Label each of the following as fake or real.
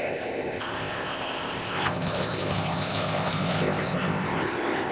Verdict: fake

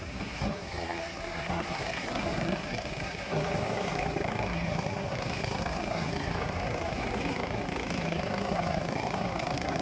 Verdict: fake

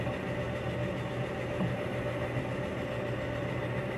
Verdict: real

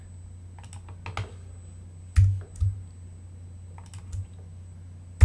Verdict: real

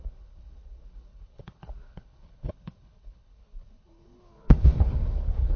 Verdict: fake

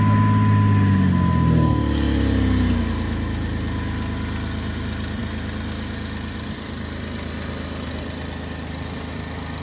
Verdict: real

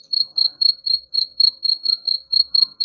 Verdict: fake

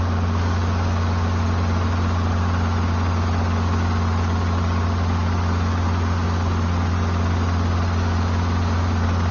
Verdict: real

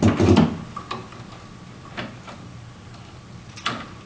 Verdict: real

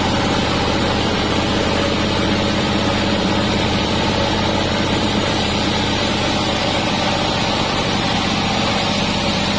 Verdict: fake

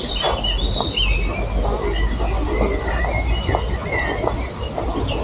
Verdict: real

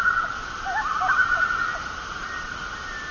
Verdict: real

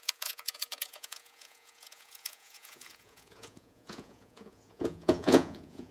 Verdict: fake